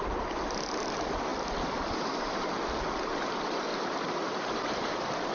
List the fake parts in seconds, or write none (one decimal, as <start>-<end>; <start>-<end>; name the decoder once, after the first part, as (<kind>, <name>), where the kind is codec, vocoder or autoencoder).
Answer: none